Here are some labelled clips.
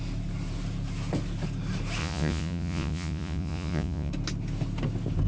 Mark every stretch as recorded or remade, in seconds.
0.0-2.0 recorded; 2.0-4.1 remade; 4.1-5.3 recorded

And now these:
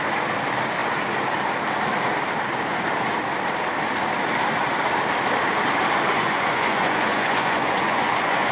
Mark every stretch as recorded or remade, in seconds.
0.0-6.1 recorded; 6.1-8.5 remade

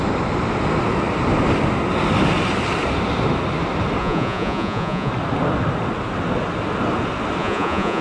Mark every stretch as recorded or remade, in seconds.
0.0-4.0 recorded; 4.0-5.1 remade; 5.1-7.4 recorded; 7.4-8.0 remade